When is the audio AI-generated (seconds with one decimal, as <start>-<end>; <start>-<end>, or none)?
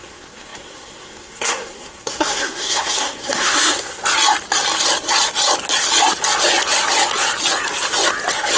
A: 0.0-4.0